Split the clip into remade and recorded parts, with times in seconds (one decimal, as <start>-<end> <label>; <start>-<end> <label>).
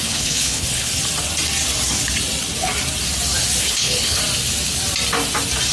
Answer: 0.0-0.9 remade; 0.9-3.6 recorded; 3.6-4.2 remade; 4.2-5.7 recorded